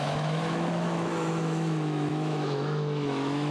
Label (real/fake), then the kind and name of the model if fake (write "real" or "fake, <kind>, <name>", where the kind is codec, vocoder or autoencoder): fake, autoencoder, DAC-VAE